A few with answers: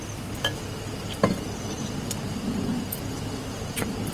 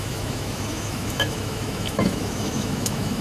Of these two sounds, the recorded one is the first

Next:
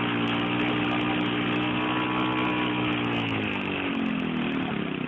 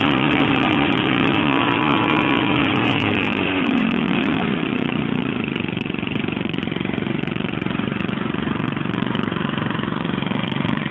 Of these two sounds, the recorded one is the first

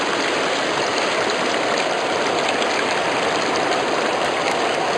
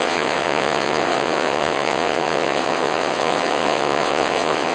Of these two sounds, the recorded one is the first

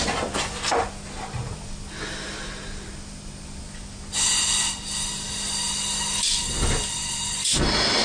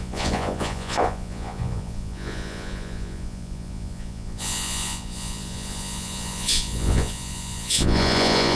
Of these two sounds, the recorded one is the first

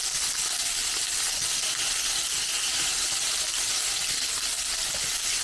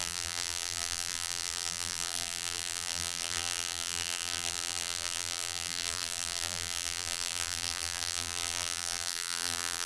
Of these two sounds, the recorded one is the first